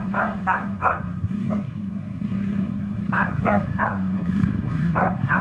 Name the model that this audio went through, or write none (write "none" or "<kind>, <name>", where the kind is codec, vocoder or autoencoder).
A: codec, SNAC